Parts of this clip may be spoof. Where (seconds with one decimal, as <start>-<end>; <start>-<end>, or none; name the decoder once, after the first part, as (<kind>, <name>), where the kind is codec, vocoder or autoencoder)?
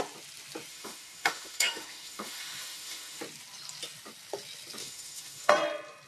0.7-3.2 (autoencoder, DAC-VAE); 4.8-5.5